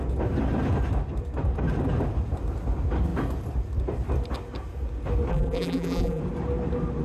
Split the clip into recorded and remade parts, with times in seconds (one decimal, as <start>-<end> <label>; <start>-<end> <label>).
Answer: 0.0-5.3 recorded; 5.3-6.2 remade; 6.2-7.0 recorded

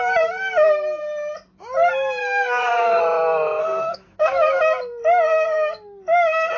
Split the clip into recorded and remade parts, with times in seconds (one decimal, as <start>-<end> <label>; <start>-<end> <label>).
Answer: 0.0-2.2 recorded; 2.2-3.0 remade; 3.0-3.6 recorded; 3.6-4.6 remade; 4.6-6.6 recorded

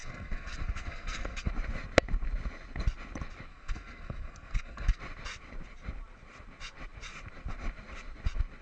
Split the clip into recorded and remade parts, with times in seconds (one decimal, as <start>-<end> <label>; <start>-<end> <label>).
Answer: 0.0-1.5 remade; 1.5-3.5 recorded; 3.5-5.0 remade; 5.0-8.6 recorded

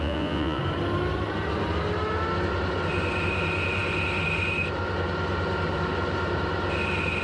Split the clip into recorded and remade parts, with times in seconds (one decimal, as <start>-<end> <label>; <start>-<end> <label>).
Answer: 0.0-0.6 remade; 0.6-7.2 recorded

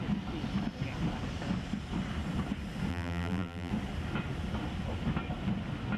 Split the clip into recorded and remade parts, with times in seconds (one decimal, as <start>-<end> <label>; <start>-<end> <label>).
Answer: 0.0-2.9 recorded; 2.9-3.7 remade; 3.7-6.0 recorded

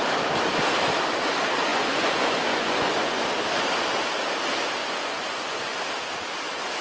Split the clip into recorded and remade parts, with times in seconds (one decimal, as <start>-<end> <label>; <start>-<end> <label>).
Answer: 0.0-1.7 recorded; 1.7-3.2 remade; 3.2-4.8 recorded; 4.8-5.8 remade; 5.8-6.8 recorded

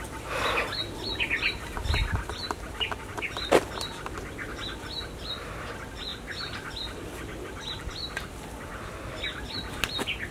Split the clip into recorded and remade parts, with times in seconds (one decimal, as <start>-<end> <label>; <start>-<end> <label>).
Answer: 0.0-10.3 recorded